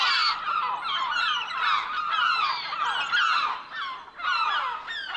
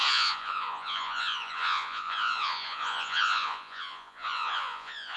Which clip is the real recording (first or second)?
first